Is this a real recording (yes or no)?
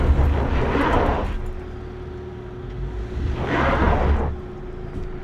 yes